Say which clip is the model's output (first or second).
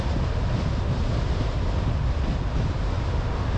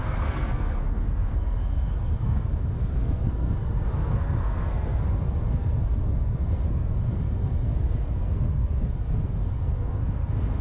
second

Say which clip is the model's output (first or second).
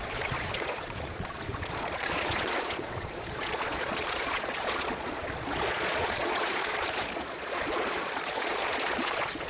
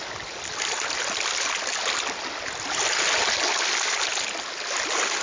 first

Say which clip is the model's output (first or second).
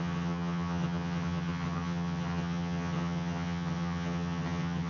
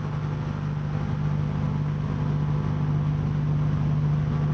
first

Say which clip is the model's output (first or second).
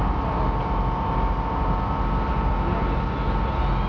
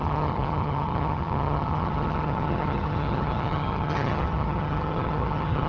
second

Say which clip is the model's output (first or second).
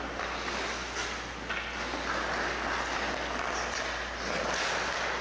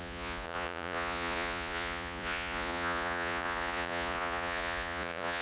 second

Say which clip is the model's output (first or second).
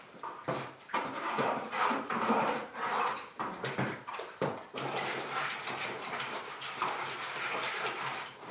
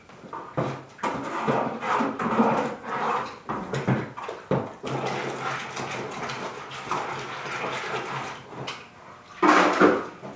first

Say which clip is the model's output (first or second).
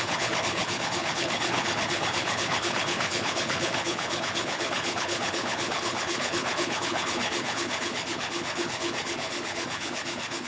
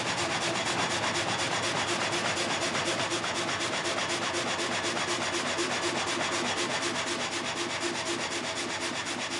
first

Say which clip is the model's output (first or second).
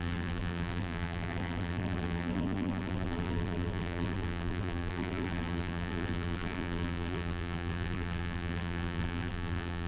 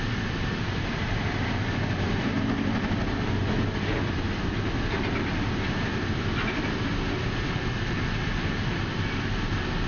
first